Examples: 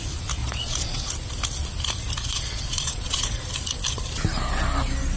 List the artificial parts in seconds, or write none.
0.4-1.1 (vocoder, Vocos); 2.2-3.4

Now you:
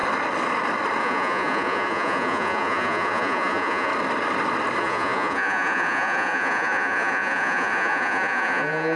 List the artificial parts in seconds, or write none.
1.0-3.9 (vocoder, Vocos); 4.8-9.0

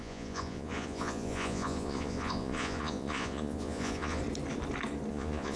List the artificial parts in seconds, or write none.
0.0-4.2 (vocoder, Vocos); 5.1-5.6

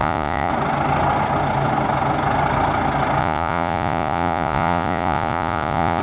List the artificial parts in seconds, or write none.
0.0-0.5 (vocoder, Vocos); 3.2-6.0

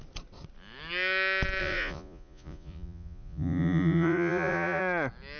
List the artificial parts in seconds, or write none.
1.6-4.8 (vocoder, Vocos)

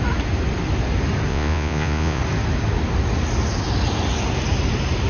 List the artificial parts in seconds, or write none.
1.3-2.2 (vocoder, Vocos)